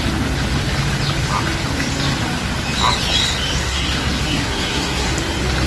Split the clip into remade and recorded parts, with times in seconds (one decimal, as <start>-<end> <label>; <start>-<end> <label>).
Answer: 0.0-3.6 recorded; 3.6-5.1 remade; 5.1-5.7 recorded